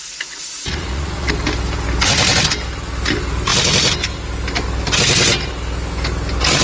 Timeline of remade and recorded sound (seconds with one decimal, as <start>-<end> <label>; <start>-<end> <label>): 0.0-1.3 remade; 1.3-6.6 recorded